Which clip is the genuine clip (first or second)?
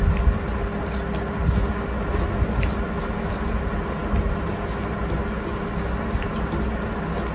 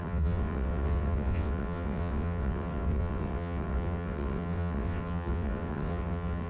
first